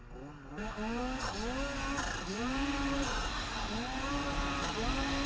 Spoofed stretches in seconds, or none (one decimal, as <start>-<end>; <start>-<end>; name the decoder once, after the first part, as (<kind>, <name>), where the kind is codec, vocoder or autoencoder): 0.5-1.0 (vocoder, BigVGAN v2); 1.8-3.2; 4.1-5.3